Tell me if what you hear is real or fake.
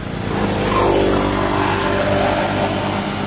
real